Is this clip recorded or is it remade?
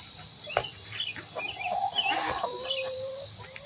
recorded